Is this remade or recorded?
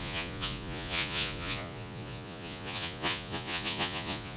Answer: remade